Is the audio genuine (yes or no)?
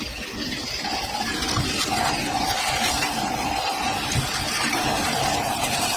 yes